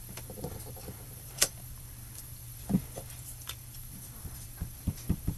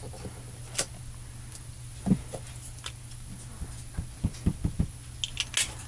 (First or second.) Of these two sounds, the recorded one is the second